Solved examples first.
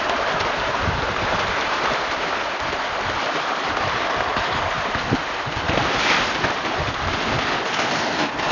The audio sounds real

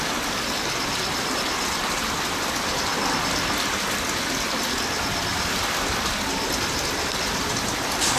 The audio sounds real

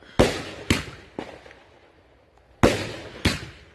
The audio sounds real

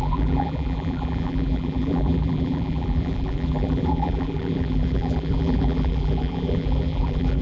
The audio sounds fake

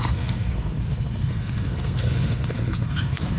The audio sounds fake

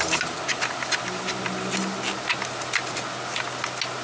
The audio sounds real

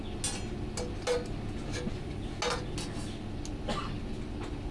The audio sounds real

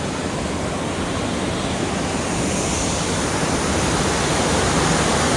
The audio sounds real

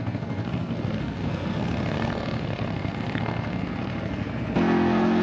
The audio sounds fake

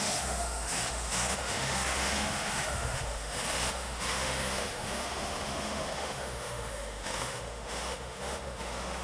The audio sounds fake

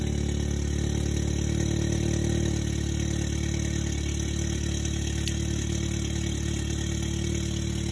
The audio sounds real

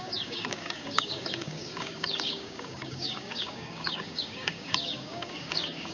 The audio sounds fake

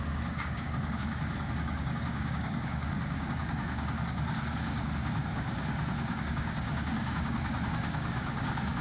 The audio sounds fake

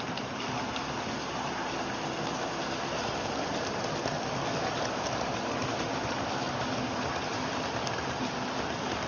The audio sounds real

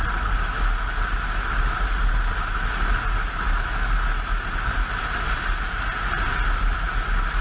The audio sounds real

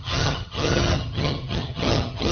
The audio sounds fake